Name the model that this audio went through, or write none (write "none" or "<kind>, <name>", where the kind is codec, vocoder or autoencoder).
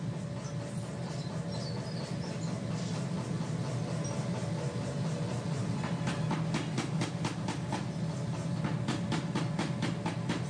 none